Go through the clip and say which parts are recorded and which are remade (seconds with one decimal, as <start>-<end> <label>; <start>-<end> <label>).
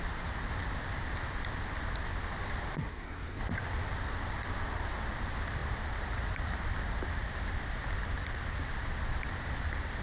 0.0-2.8 recorded; 2.8-3.4 remade; 3.4-10.0 recorded